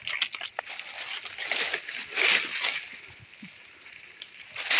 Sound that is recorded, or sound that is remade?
recorded